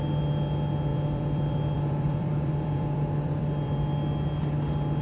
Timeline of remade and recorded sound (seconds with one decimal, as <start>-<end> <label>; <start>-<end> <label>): 0.0-0.9 recorded; 0.9-3.9 remade; 3.9-5.0 recorded